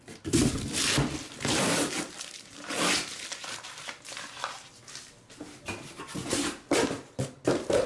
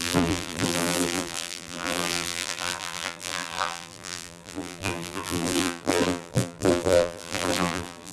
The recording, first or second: first